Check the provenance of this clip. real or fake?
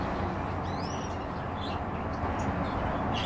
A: real